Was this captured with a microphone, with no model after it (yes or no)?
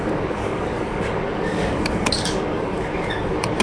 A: no